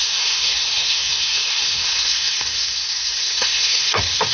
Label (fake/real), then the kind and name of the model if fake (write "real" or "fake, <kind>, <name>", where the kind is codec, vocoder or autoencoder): fake, codec, SNAC